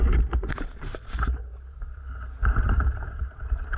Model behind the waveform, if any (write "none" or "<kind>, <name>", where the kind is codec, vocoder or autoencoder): vocoder, BigVGAN v2